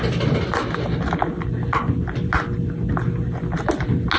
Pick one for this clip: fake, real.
real